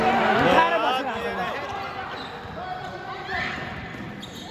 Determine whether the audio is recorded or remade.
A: recorded